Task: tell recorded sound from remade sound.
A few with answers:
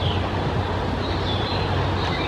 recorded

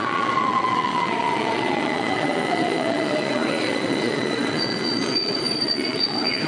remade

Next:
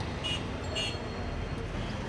recorded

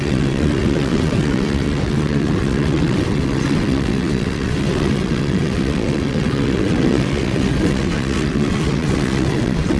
remade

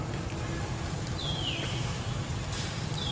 recorded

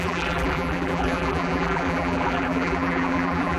remade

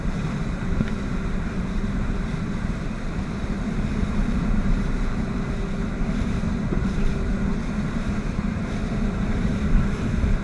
remade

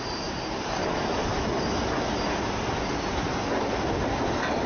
recorded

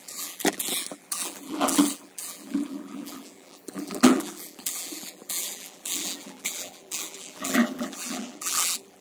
remade